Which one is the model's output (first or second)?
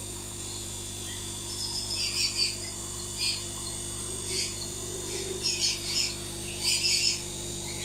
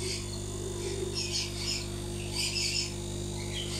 first